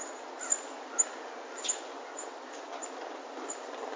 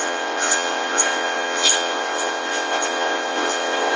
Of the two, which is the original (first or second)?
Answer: first